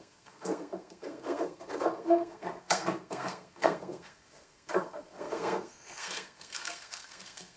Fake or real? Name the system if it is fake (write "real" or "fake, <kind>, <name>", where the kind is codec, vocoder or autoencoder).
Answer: fake, codec, SNAC